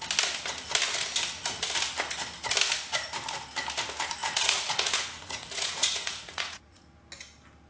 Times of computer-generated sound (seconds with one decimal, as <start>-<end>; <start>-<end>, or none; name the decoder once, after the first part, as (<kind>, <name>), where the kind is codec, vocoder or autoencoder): 4.2-6.8 (vocoder, Vocos)